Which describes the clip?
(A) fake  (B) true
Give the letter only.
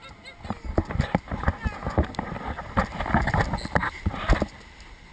B